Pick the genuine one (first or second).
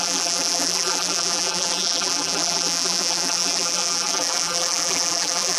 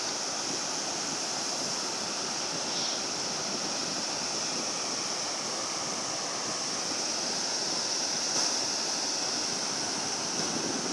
second